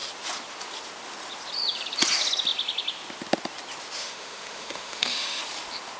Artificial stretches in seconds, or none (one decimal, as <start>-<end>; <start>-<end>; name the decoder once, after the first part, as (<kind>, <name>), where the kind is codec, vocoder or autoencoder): 4.0-5.4 (autoencoder, DAC-VAE)